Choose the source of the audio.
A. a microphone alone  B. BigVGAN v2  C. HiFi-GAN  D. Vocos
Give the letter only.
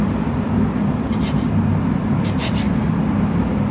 B